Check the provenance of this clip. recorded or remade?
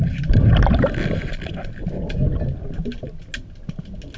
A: recorded